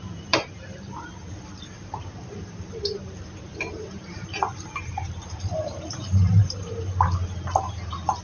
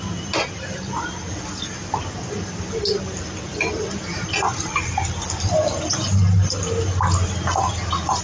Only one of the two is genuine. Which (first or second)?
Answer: second